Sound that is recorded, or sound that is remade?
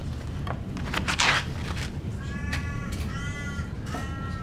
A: recorded